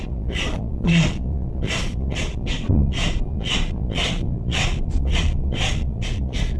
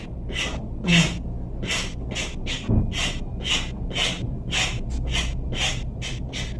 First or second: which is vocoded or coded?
first